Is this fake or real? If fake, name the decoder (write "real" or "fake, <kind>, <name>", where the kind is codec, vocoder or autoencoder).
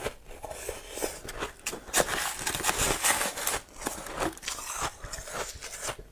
real